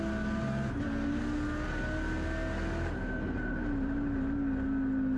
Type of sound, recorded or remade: recorded